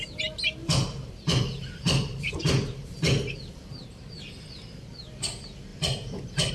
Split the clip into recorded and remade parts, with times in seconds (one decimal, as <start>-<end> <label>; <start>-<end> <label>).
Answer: 0.0-0.6 recorded; 0.6-4.5 remade; 4.5-5.7 recorded; 5.7-6.5 remade